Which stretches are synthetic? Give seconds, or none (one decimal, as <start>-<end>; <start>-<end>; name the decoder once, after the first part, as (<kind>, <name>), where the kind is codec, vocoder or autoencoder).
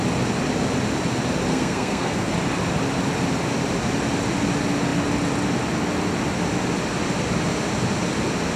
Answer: 1.5-2.3 (codec, SNAC)